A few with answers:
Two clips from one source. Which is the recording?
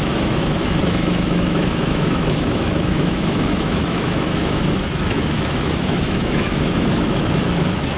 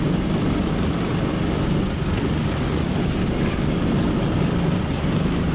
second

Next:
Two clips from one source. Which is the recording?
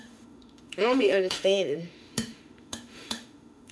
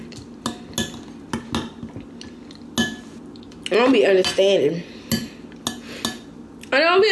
second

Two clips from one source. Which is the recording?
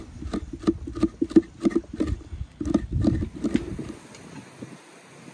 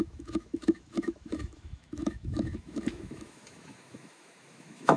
first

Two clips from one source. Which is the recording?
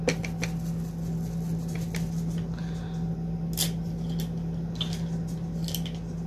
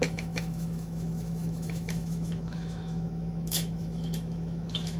first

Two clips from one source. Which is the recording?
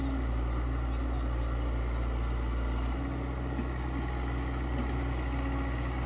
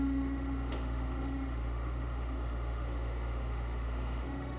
first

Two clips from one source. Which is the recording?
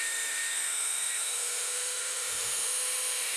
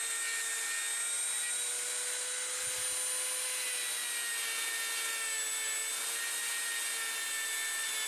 second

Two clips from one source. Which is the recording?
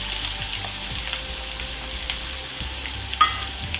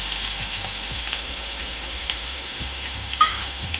first